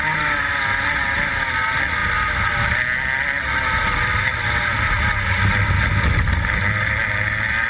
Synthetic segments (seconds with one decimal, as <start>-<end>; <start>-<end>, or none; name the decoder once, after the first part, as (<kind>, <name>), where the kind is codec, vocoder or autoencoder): none